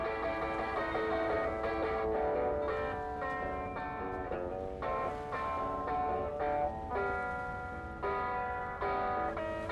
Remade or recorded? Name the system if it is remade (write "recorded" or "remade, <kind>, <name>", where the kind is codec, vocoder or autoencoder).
recorded